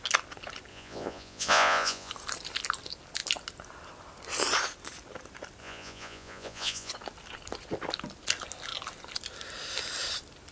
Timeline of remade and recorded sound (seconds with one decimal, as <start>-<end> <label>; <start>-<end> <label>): 0.0-0.7 recorded; 0.7-2.1 remade; 2.1-5.6 recorded; 5.6-6.9 remade; 6.9-10.5 recorded